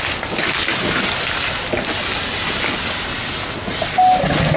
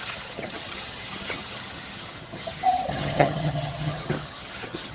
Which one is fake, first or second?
second